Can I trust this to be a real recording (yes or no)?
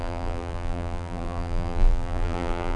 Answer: no